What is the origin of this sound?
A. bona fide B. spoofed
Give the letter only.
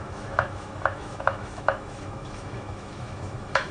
B